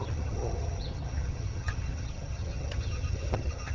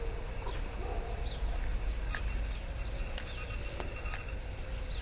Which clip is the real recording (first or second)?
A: second